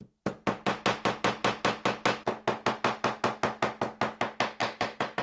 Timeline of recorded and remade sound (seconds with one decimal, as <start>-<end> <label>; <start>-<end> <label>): 0.0-4.6 recorded; 4.6-5.2 remade